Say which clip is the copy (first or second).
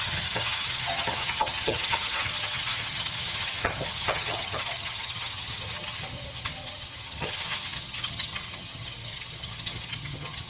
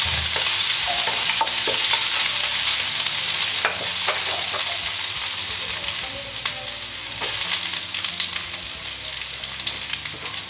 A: first